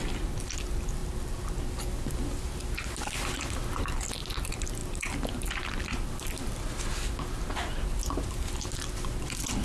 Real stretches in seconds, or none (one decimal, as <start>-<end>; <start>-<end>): 0.0-9.6